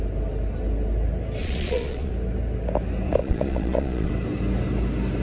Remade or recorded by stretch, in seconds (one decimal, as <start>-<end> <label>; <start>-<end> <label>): 0.0-1.4 recorded; 1.4-2.1 remade; 2.1-3.2 recorded; 3.2-4.1 remade; 4.1-5.2 recorded